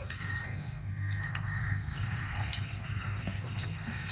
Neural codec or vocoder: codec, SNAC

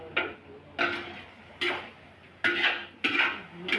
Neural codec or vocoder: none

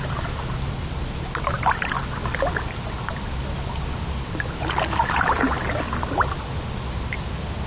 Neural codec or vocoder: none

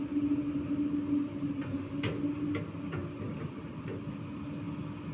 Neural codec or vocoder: none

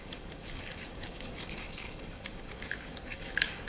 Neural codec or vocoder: codec, DAC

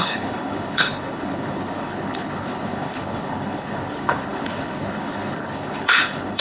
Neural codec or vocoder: codec, HILCodec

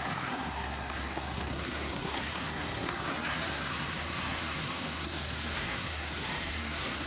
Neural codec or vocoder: codec, SNAC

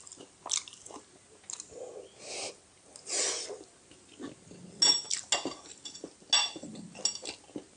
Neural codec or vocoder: none